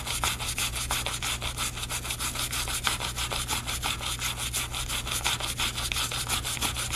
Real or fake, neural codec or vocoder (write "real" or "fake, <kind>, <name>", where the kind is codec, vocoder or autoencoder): real